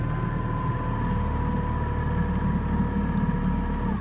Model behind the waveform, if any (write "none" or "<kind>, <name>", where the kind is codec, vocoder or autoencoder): none